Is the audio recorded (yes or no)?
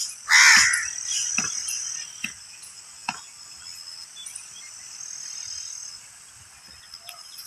yes